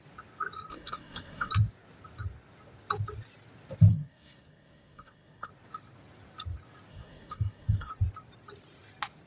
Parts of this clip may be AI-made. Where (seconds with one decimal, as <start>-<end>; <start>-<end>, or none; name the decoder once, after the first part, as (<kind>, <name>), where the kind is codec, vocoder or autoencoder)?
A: 0.7-1.5 (codec, SNAC); 3.9-5.5; 6.9-7.9